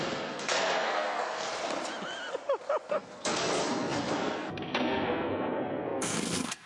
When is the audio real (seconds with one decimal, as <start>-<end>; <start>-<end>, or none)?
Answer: 1.5-2.9